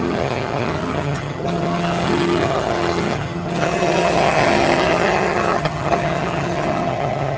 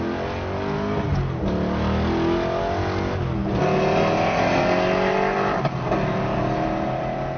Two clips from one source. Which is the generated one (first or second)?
first